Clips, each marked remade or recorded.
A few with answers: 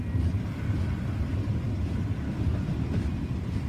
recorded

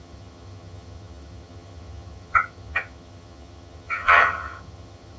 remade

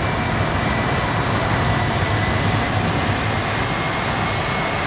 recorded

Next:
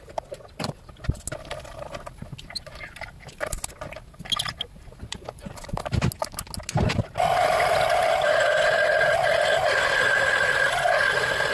recorded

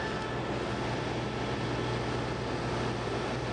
recorded